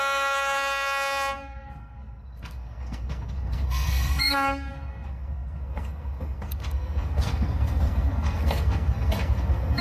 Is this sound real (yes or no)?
no